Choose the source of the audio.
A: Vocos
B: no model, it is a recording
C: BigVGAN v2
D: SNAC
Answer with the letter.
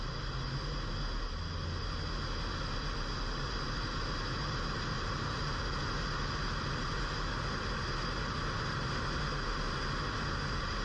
B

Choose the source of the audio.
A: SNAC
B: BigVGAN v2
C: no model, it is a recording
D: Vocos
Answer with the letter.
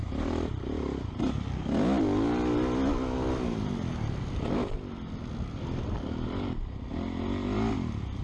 C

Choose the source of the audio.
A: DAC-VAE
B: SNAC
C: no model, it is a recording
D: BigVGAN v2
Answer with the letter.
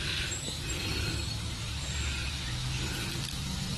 C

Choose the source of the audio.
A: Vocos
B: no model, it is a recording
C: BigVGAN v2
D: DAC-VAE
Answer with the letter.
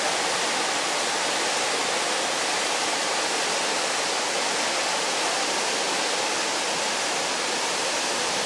B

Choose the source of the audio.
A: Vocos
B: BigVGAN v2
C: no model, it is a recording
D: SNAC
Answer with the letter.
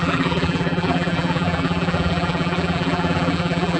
B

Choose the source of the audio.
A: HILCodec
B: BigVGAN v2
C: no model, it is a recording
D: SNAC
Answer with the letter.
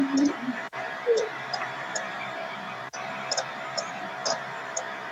B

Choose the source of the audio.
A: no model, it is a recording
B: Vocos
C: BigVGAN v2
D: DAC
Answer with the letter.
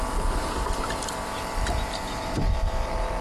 C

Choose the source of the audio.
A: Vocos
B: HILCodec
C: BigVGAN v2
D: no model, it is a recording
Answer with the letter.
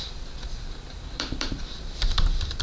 C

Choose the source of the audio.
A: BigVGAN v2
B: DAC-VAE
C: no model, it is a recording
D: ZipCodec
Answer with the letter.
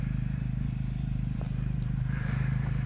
A